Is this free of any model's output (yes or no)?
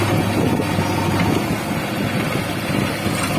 yes